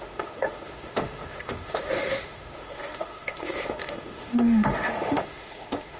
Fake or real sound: fake